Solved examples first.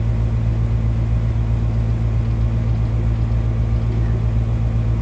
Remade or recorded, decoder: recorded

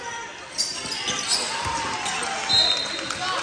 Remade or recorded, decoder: recorded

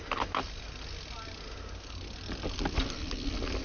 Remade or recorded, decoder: recorded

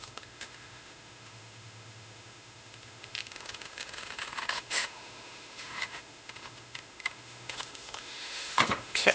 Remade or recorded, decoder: remade, autoencoder, DAC-VAE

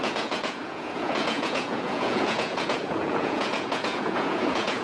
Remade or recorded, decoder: remade, vocoder, Vocos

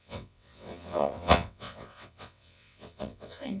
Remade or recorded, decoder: remade, vocoder, WaveNeXt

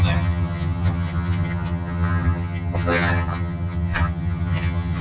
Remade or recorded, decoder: remade, vocoder, HiFi-GAN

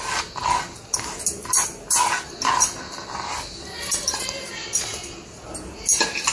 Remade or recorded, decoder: recorded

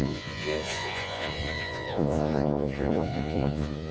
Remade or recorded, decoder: remade, vocoder, Vocos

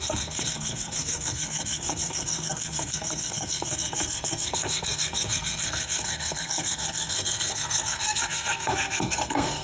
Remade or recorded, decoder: remade, codec, SNAC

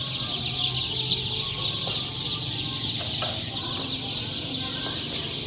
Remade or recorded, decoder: recorded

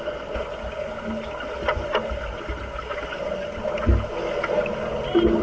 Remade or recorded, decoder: recorded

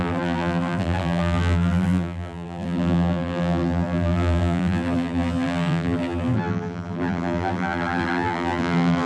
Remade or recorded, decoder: remade, vocoder, BigVGAN v2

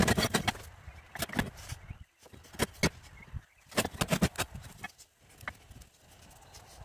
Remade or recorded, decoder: recorded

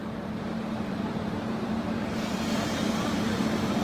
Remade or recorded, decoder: remade, vocoder, BigVGAN v2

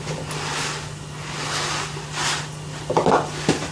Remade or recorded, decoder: recorded